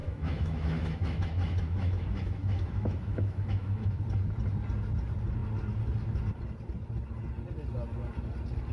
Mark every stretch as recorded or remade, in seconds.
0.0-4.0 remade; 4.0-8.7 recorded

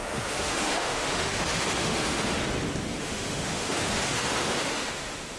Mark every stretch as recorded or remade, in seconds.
0.0-2.4 remade; 2.4-3.0 recorded; 3.0-5.4 remade

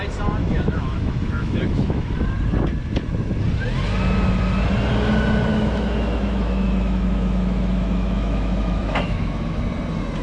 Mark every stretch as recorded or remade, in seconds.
0.0-0.4 recorded; 0.4-2.1 remade; 2.1-5.5 recorded; 5.5-9.6 remade; 9.6-10.2 recorded

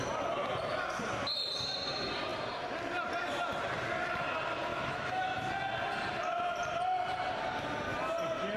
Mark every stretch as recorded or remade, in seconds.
0.0-4.7 recorded; 4.7-5.5 remade; 5.5-8.6 recorded

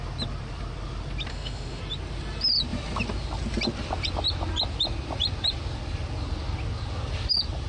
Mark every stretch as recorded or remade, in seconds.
0.0-1.3 recorded; 1.3-1.8 remade; 1.8-7.7 recorded

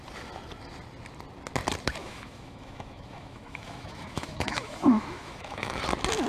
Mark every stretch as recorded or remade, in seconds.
0.0-2.0 recorded; 2.0-5.8 remade; 5.8-6.3 recorded

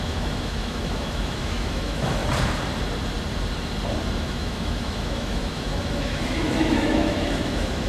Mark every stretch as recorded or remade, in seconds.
0.0-2.2 remade; 2.2-4.2 recorded; 4.2-7.9 remade